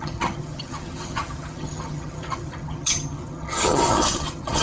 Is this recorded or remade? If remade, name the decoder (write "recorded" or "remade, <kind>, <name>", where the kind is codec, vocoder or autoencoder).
remade, vocoder, HiFi-GAN